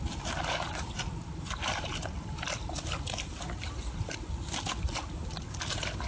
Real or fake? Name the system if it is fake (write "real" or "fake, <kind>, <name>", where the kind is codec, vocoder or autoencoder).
real